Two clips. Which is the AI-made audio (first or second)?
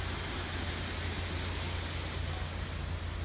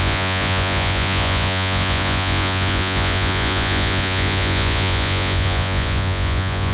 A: second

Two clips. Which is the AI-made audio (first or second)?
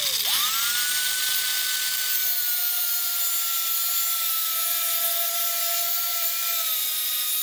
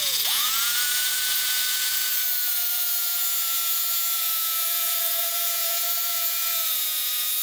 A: second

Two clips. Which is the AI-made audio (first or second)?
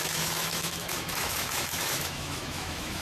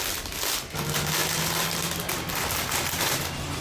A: first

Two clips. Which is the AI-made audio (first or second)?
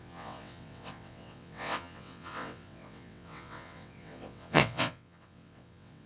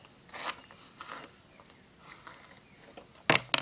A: first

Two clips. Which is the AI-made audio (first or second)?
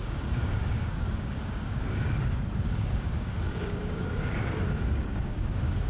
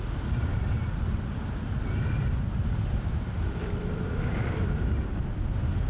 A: first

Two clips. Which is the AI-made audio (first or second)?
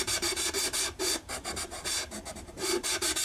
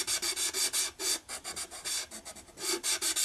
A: first